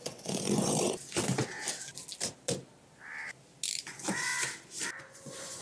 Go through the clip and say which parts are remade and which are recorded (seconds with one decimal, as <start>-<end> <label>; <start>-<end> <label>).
0.0-1.2 remade; 1.2-3.8 recorded; 3.8-4.3 remade; 4.3-5.0 recorded; 5.0-5.6 remade